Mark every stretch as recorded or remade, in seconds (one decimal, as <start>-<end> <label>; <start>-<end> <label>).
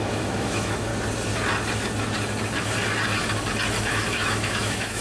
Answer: 0.0-0.9 remade; 0.9-3.9 recorded; 3.9-5.0 remade